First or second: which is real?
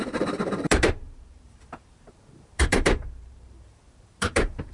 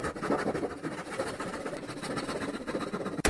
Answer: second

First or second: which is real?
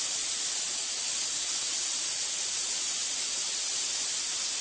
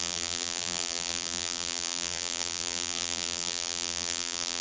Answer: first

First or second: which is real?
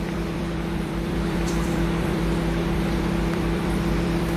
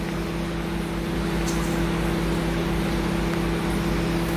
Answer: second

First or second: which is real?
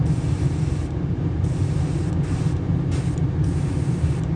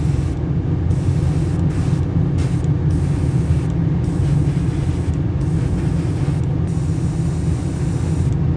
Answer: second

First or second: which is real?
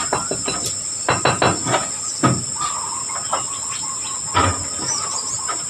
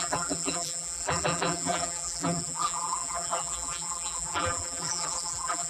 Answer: first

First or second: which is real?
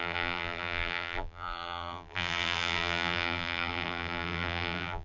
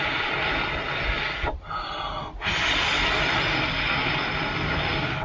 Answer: second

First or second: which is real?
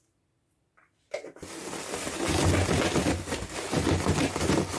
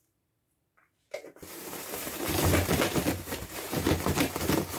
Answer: first